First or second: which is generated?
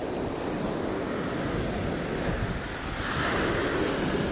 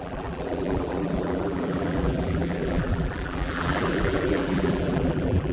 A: second